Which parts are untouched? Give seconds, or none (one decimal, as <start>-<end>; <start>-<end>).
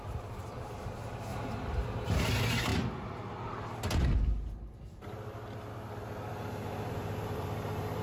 2.7-6.9